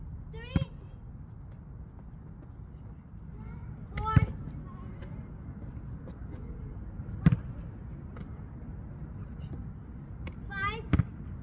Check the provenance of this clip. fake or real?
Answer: real